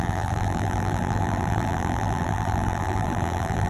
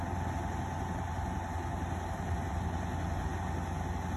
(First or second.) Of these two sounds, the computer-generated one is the first